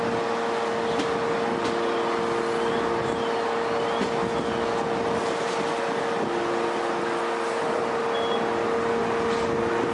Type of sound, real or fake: real